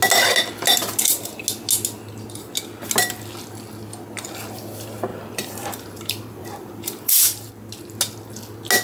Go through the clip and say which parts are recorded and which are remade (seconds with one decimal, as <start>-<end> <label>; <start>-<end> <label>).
0.0-5.1 recorded; 5.1-7.5 remade; 7.5-8.8 recorded